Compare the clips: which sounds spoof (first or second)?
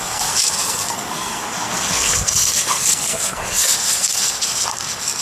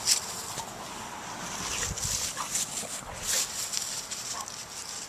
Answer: first